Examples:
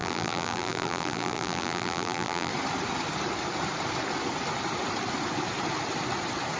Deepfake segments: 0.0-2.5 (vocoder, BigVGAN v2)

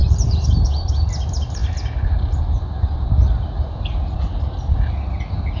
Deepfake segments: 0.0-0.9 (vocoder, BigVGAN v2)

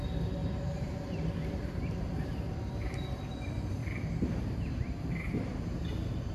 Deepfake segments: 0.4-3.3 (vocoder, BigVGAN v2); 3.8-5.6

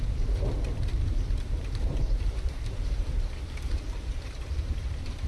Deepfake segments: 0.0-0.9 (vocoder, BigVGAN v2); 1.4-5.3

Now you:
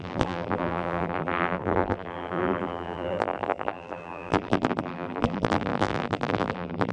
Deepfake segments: 0.0-6.9 (vocoder, BigVGAN v2)

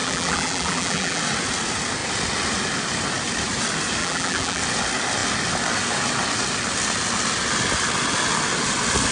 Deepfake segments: 0.0-1.2 (vocoder, BigVGAN v2); 4.0-4.6

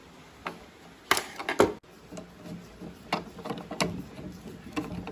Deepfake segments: none